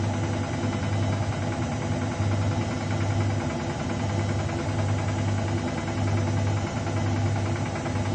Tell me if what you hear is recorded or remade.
recorded